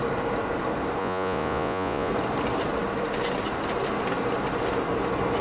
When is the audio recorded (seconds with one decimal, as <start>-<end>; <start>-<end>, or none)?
0.0-1.0; 2.1-5.4